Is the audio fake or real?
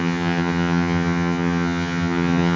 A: fake